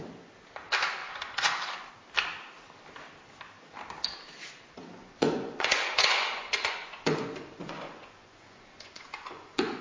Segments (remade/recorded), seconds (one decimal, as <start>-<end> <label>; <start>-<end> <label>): 0.0-1.0 recorded; 1.0-1.9 remade; 1.9-5.0 recorded; 5.0-9.8 remade